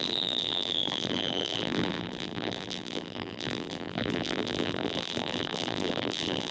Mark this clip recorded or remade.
remade